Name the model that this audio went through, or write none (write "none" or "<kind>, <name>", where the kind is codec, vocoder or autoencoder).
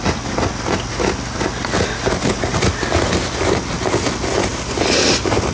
none